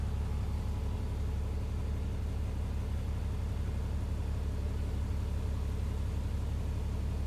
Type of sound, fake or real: real